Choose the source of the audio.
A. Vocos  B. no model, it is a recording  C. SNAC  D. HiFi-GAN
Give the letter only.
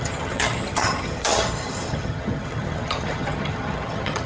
D